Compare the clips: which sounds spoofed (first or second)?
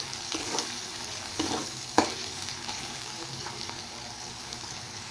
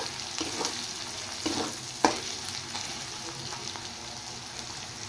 first